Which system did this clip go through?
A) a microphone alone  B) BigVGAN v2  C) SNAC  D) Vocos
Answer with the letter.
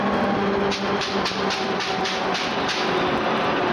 A